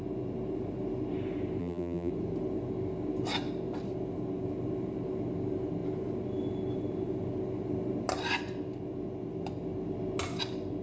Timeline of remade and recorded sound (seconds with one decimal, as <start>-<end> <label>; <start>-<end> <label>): 0.0-1.6 recorded; 1.6-2.1 remade; 2.1-10.8 recorded